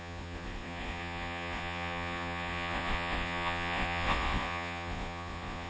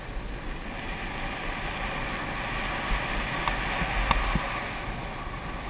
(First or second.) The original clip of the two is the second